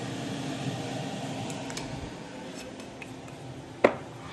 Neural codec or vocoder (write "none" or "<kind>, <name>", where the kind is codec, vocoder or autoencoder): none